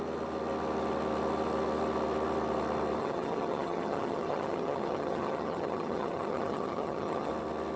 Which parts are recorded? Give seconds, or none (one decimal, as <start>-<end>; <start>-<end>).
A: 0.0-3.0; 7.3-7.8